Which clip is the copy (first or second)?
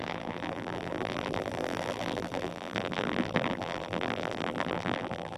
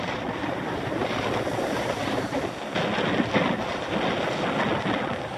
first